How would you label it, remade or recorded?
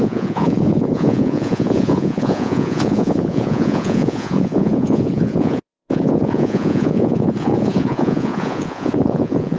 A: remade